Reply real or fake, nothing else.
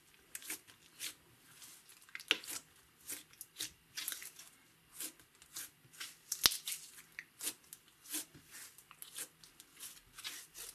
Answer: real